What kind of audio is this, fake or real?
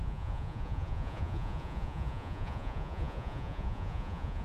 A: fake